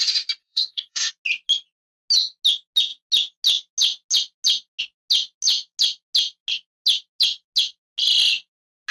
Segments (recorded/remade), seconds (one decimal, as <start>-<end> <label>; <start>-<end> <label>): 0.0-0.4 recorded; 0.4-1.1 remade; 1.1-8.9 recorded